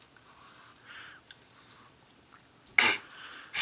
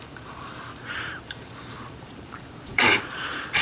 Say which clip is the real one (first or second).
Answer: first